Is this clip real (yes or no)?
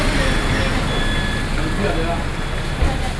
yes